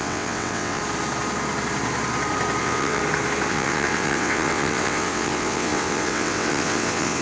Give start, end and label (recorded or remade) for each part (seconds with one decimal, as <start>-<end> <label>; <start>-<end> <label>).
0.0-0.8 remade; 0.8-2.6 recorded; 2.6-3.0 remade; 3.0-3.5 recorded; 3.5-7.2 remade